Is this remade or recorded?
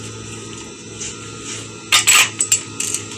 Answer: recorded